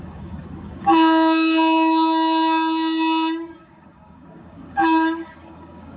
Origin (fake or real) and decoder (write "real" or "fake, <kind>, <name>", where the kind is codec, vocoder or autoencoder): fake, codec, DAC